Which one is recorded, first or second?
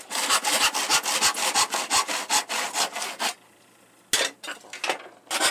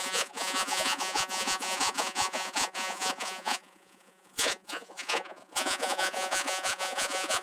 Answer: first